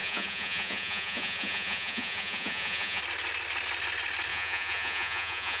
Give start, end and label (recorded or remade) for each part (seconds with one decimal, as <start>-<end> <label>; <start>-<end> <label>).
0.0-3.0 remade; 3.0-4.3 recorded; 4.3-5.6 remade